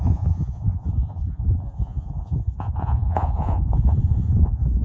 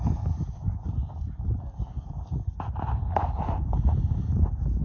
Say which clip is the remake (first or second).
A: first